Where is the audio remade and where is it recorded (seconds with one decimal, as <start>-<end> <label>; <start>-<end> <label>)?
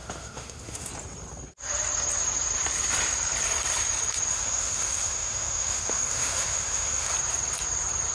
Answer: 0.0-0.9 remade; 0.9-4.3 recorded; 4.3-7.1 remade; 7.1-8.1 recorded